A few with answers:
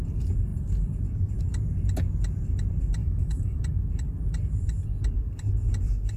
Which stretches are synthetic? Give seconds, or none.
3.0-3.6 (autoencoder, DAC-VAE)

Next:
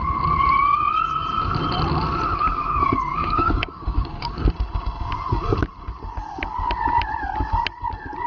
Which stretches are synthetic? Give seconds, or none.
3.1-4.5 (codec, DAC)